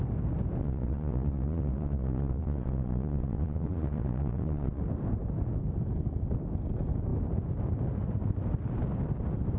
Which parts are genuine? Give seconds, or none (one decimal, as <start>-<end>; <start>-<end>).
0.0-0.6; 4.8-9.6